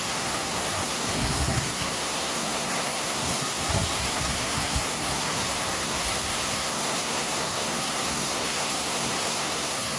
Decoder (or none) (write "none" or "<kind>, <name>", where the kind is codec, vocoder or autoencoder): codec, SNAC